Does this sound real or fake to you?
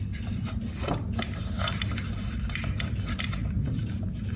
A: real